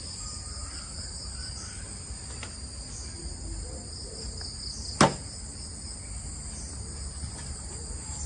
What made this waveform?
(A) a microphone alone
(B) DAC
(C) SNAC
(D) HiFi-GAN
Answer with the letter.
A